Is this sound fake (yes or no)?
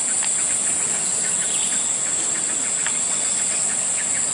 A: no